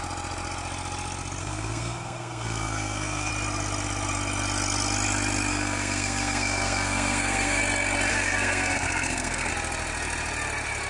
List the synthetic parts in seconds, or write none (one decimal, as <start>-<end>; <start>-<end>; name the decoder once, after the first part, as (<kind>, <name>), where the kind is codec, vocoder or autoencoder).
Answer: 1.4-3.3 (codec, SNAC); 5.5-7.6; 8.1-9.5